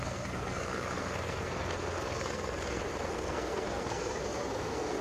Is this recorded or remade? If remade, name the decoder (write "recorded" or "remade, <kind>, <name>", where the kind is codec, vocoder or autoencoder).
remade, codec, SNAC